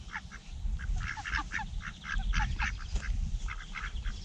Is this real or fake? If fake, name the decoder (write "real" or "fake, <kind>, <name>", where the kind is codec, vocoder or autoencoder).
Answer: fake, vocoder, BigVGAN v2